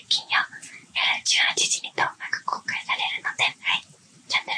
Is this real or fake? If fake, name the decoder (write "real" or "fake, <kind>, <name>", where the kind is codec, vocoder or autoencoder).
fake, vocoder, WaveNeXt